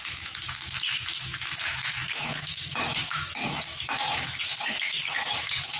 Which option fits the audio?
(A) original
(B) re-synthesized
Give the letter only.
B